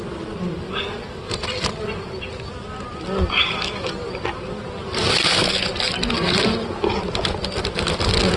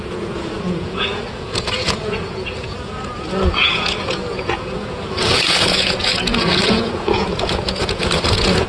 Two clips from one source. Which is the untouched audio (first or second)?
first